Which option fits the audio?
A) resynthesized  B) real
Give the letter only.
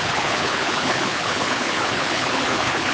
A